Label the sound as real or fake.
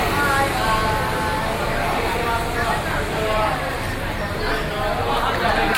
real